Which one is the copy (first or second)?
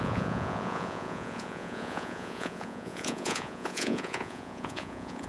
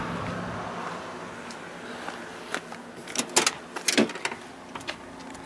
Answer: first